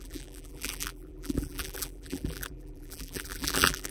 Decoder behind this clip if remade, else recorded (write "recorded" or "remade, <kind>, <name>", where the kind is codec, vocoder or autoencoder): remade, vocoder, BigVGAN v2